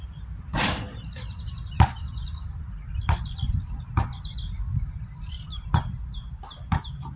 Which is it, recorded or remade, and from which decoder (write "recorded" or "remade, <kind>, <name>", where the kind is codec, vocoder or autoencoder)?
recorded